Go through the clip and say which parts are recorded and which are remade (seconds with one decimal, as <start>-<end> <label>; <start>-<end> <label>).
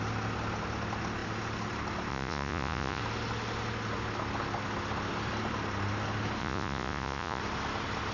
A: 0.0-2.1 recorded; 2.1-3.0 remade; 3.0-6.4 recorded; 6.4-7.4 remade; 7.4-8.1 recorded